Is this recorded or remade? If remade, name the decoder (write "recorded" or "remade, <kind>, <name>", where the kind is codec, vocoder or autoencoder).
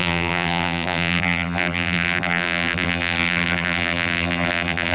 remade, vocoder, BigVGAN v2